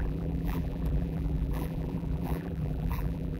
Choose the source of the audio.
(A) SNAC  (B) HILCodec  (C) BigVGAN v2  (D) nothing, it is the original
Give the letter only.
C